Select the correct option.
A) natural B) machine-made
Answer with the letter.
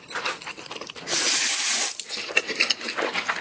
A